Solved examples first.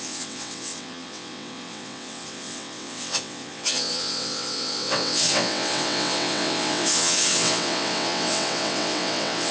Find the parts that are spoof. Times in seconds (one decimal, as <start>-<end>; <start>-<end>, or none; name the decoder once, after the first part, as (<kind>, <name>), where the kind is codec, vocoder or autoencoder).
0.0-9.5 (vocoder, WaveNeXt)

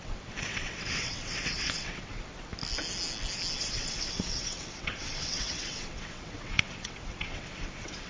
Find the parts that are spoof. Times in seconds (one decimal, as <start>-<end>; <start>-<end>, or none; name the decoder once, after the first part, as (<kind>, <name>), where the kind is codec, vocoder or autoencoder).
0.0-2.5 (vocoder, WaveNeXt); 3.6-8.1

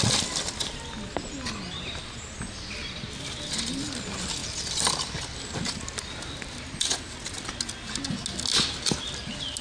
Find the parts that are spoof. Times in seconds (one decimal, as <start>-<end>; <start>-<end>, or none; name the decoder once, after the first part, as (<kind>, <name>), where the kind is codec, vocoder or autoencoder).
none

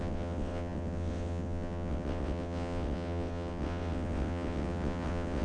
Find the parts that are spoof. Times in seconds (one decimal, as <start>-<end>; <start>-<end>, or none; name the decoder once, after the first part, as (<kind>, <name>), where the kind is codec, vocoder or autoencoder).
0.0-5.4 (vocoder, WaveNeXt)

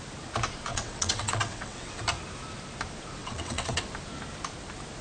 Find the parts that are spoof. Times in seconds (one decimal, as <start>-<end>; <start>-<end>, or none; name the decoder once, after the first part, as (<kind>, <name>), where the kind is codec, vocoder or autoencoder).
0.7-2.0 (vocoder, WaveNeXt); 3.2-3.8

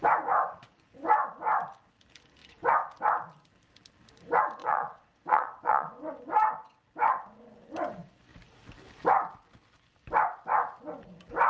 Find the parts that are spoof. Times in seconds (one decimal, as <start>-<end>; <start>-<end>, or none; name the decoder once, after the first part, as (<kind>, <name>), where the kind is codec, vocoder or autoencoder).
4.6-6.1 (vocoder, WaveNeXt)

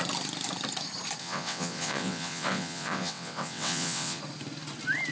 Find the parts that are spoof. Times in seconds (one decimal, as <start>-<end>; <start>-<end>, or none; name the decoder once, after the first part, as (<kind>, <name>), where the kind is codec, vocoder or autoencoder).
1.2-4.2 (vocoder, WaveNeXt)

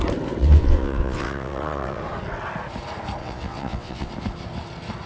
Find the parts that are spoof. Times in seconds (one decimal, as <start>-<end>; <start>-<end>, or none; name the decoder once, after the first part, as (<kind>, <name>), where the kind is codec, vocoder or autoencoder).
0.4-2.0 (vocoder, WaveNeXt); 3.2-4.1